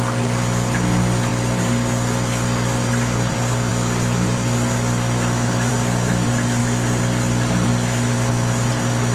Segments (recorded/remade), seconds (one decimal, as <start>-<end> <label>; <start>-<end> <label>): 0.0-9.1 recorded